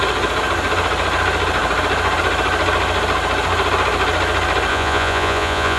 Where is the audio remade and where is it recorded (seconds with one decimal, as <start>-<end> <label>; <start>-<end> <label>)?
0.0-4.7 recorded; 4.7-5.8 remade